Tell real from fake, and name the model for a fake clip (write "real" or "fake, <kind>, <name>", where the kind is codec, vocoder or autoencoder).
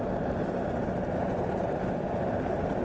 real